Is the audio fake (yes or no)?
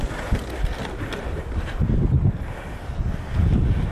no